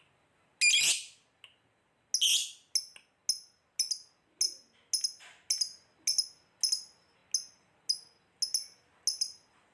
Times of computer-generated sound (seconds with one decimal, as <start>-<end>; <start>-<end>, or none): none